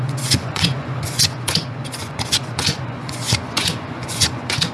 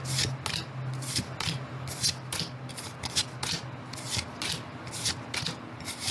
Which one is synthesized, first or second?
first